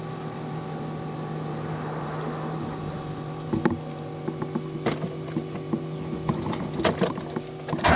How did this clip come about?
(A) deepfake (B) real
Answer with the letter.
B